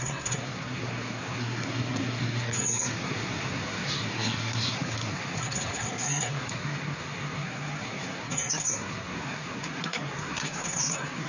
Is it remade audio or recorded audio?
remade